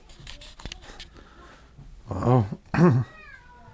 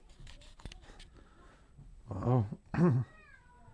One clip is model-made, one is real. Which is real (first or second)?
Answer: first